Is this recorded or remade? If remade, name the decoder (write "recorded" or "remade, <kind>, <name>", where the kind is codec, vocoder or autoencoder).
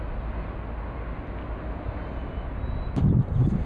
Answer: recorded